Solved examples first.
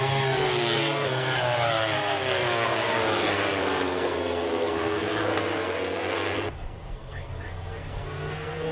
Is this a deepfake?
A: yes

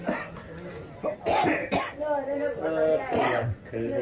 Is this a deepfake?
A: no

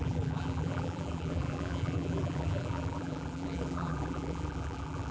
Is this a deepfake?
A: yes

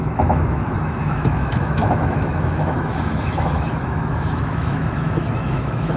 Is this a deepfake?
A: yes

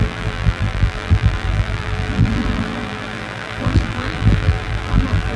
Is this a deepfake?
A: yes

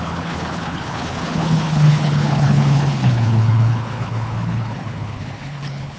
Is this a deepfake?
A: yes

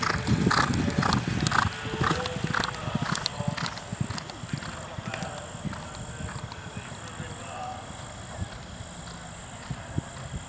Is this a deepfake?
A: no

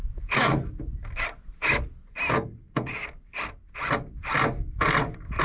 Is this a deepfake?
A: no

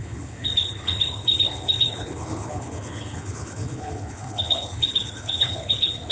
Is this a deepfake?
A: yes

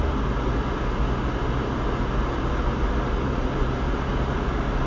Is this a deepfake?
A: no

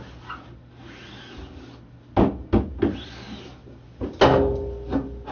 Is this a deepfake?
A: no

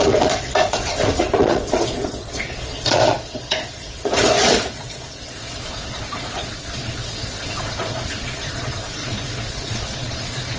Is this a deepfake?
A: yes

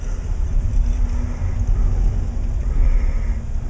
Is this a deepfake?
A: no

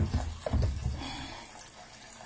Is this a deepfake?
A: no